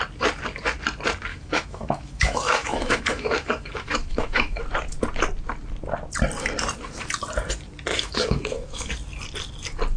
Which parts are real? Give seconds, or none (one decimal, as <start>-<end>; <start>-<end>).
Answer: 0.0-1.3; 4.6-7.9; 8.9-10.0